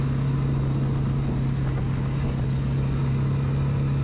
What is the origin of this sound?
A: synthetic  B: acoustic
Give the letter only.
B